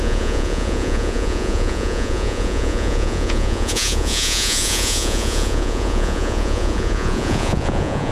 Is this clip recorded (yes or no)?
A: no